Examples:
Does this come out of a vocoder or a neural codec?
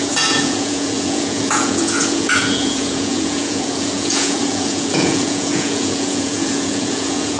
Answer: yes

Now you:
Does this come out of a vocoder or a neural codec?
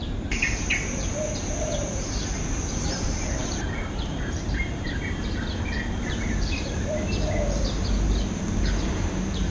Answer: yes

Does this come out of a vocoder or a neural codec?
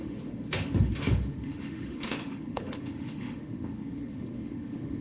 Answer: yes